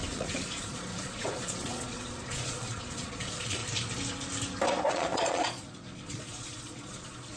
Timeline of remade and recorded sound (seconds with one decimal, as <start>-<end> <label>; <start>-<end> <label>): 0.0-3.6 remade; 3.6-4.9 recorded; 4.9-7.4 remade